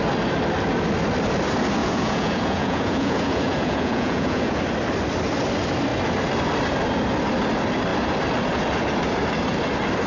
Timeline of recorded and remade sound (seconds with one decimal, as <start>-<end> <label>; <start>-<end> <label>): 0.0-1.8 recorded; 1.8-4.6 remade; 4.6-10.1 recorded